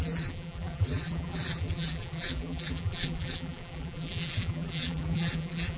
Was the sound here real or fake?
fake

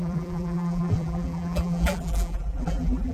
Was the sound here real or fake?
fake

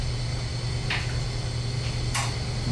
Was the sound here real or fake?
real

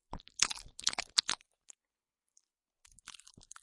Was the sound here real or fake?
fake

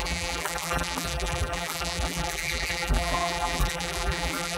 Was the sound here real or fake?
fake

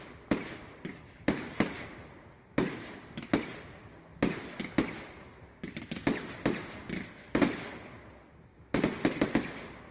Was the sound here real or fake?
real